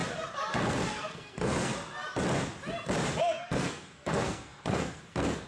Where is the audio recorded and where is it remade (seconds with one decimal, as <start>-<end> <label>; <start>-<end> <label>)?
0.0-0.5 recorded; 0.5-1.7 remade; 1.7-3.2 recorded; 3.2-5.5 remade